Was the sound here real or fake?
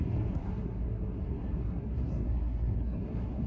fake